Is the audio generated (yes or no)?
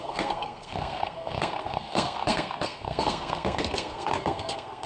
yes